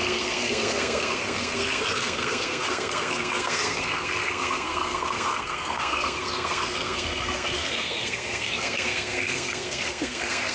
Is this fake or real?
fake